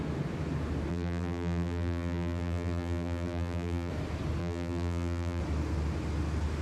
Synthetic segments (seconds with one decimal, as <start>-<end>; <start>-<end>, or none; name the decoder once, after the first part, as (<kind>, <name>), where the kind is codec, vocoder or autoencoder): 0.9-3.9 (vocoder, BigVGAN v2); 4.4-5.4